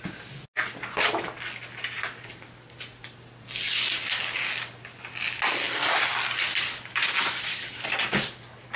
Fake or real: real